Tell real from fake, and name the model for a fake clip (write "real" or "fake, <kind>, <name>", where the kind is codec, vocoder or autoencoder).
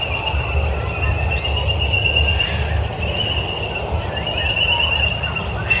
real